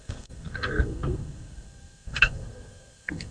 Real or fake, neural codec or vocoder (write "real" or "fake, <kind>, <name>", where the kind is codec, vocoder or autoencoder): fake, codec, SNAC